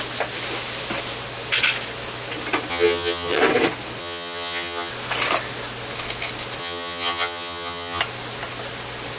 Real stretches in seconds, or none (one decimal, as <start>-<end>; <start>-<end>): 0.0-2.7; 3.4-4.0; 4.9-6.6; 8.0-9.2